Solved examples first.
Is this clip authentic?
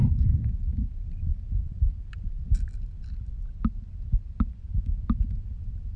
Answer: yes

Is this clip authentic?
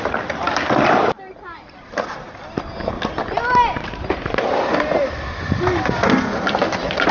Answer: yes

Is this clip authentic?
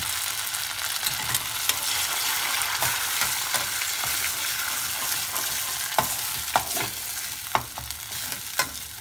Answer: yes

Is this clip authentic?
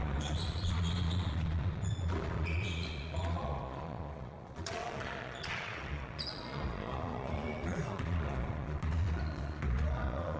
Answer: no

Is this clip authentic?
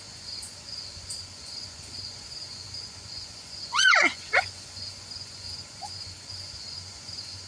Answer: no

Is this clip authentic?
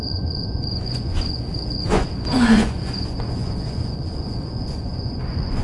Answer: no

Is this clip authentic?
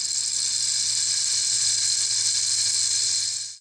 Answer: yes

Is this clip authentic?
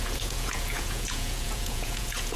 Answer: no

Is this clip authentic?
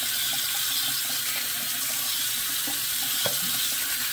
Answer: yes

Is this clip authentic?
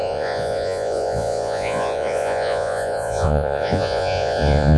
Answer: no